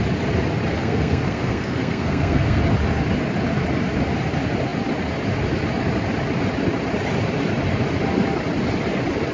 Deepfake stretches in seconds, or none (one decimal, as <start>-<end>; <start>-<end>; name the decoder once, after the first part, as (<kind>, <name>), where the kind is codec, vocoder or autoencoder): 0.7-2.6 (codec, SNAC)